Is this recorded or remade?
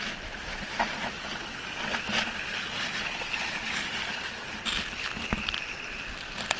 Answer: recorded